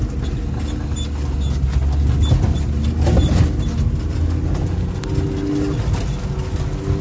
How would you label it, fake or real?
real